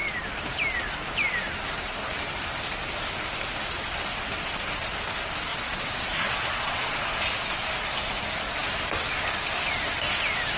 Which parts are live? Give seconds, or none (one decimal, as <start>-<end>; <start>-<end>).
0.0-5.5; 7.0-10.6